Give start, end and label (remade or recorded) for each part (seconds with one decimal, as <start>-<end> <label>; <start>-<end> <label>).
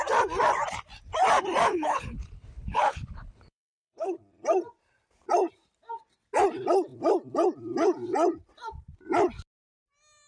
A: 0.0-1.7 recorded; 1.7-4.2 remade; 4.2-10.3 recorded